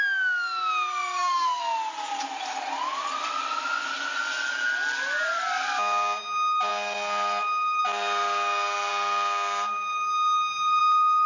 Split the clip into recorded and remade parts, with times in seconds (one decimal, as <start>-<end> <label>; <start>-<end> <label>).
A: 0.0-0.9 recorded; 0.9-1.6 remade; 1.6-11.3 recorded